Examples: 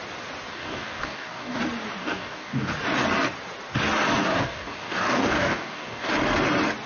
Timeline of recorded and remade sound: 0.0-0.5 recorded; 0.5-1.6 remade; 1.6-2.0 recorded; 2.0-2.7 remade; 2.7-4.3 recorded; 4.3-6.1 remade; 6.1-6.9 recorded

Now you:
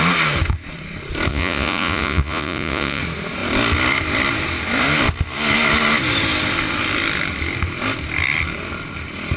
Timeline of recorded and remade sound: 0.0-1.3 recorded; 1.3-3.0 remade; 3.0-9.4 recorded

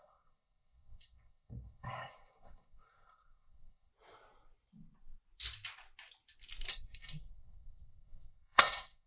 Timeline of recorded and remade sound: 0.0-3.9 remade; 3.9-6.7 recorded; 6.7-9.1 remade

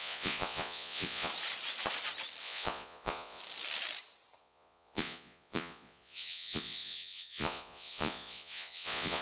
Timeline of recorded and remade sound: 0.0-1.3 remade; 1.3-2.4 recorded; 2.4-3.4 remade; 3.4-4.4 recorded; 4.4-9.2 remade

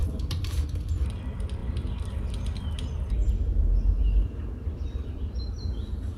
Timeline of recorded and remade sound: 0.0-1.2 remade; 1.2-4.0 recorded; 4.0-5.4 remade; 5.4-6.2 recorded

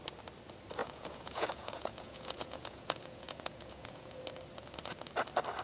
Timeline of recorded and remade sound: 0.0-0.8 recorded; 0.8-4.2 remade; 4.2-5.6 recorded